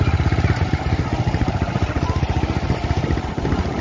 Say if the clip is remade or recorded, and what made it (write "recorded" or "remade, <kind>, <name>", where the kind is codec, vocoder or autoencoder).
recorded